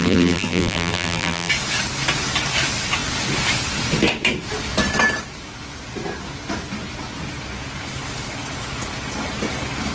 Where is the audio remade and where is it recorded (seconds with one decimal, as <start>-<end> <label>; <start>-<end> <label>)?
0.0-1.5 remade; 1.5-9.9 recorded